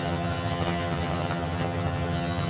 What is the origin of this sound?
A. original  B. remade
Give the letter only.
B